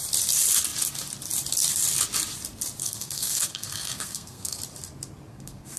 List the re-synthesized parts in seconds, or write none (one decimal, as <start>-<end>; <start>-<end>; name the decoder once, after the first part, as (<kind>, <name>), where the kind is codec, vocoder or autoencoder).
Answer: 2.8-4.6 (codec, SNAC); 5.3-5.8